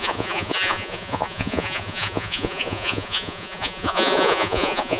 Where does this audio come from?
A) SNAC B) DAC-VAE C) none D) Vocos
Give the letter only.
D